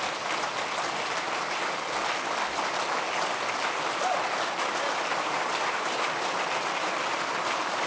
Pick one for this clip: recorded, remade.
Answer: remade